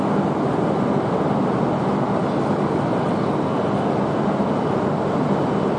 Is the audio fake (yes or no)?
no